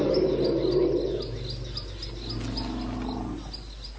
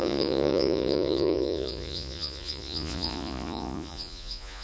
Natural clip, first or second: first